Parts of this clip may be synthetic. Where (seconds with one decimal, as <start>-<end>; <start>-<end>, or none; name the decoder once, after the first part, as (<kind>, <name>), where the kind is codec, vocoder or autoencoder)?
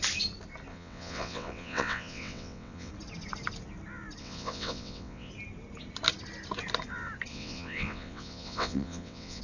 0.7-2.9 (vocoder, WaveNeXt); 4.2-5.3; 7.3-9.4